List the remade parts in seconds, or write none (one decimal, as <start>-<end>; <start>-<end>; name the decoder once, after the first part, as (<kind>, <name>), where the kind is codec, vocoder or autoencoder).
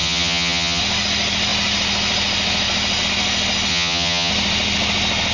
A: 0.0-0.8 (vocoder, HiFi-GAN); 3.7-4.3